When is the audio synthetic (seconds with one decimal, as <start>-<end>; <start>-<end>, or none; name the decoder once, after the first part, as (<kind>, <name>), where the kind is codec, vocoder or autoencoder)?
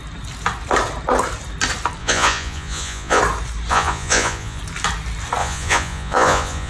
2.0-3.2 (vocoder, Vocos); 3.7-4.6; 5.4-6.7